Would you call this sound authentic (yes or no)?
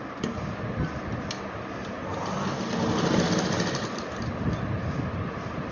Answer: yes